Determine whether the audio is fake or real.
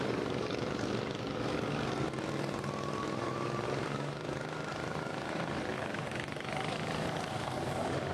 fake